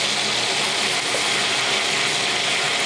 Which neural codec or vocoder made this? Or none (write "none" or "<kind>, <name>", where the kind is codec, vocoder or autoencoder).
none